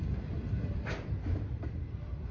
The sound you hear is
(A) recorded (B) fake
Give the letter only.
A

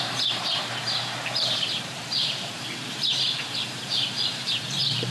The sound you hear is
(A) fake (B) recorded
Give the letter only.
A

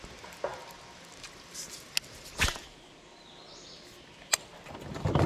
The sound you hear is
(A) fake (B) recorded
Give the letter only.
B